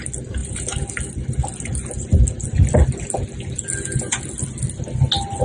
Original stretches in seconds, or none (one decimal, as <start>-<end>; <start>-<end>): 0.0-5.4

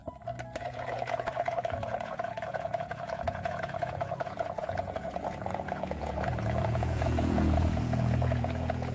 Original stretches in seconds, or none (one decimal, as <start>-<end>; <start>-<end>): 0.0-0.6

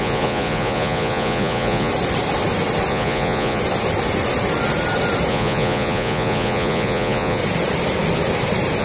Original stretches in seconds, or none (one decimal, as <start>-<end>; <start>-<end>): 1.9-2.9; 3.6-5.3; 7.4-8.8

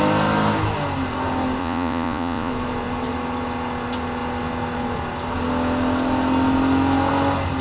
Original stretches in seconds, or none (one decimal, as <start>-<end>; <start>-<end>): 0.0-1.6; 2.5-7.6

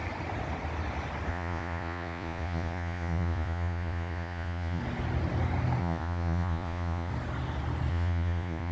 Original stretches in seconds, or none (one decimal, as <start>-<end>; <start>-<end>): 0.0-1.3; 4.8-5.8; 7.1-7.9